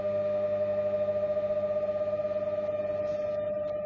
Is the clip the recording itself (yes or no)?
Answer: yes